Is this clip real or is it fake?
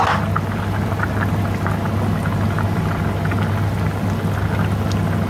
real